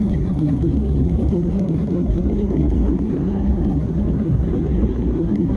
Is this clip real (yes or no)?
no